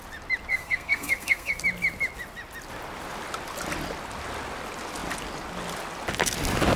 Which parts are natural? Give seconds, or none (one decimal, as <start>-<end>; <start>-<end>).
0.0-0.5; 1.6-6.8